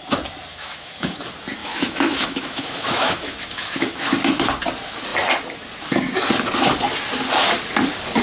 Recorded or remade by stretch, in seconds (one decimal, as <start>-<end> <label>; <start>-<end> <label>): 0.0-0.5 recorded; 0.5-1.2 remade; 1.2-1.6 recorded; 1.6-4.1 remade; 4.1-8.2 recorded

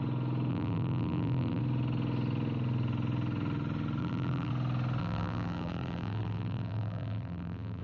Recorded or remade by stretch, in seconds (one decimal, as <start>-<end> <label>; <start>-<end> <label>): 0.0-0.5 recorded; 0.5-1.6 remade; 1.6-4.0 recorded; 4.0-4.5 remade; 4.5-5.0 recorded; 5.0-7.8 remade

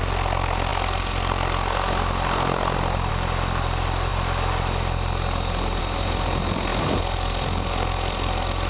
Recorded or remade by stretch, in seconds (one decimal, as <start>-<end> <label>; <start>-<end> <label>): 0.0-8.7 recorded

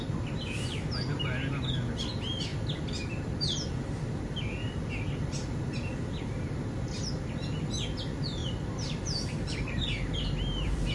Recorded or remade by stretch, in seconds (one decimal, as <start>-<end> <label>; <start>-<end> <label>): 0.0-8.4 recorded; 8.4-9.8 remade; 9.8-10.9 recorded

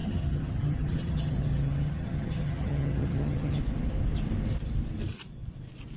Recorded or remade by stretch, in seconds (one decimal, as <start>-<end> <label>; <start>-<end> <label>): 0.0-3.6 remade; 3.6-6.0 recorded

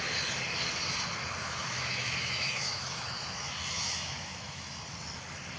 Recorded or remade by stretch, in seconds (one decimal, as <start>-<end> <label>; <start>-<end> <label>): 0.0-1.4 recorded; 1.4-4.8 remade; 4.8-5.6 recorded

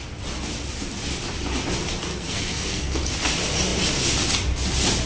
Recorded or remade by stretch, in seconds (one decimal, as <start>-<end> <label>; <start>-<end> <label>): 0.0-2.1 recorded; 2.1-3.0 remade; 3.0-5.1 recorded

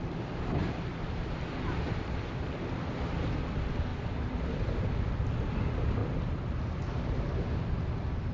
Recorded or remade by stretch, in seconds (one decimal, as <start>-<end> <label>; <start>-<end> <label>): 0.0-0.6 recorded; 0.6-3.5 remade; 3.5-3.9 recorded; 3.9-5.5 remade; 5.5-6.0 recorded; 6.0-6.6 remade; 6.6-8.3 recorded